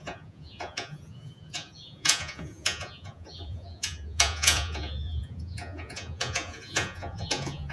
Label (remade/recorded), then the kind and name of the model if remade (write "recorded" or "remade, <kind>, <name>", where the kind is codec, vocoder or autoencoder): remade, vocoder, Vocos